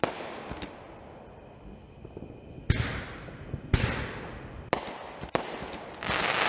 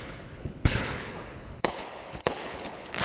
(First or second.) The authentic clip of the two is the first